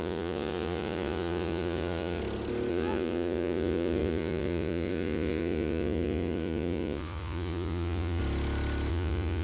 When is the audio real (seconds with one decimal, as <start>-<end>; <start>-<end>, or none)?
2.2-2.7; 8.2-8.9